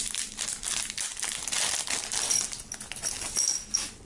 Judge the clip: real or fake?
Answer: real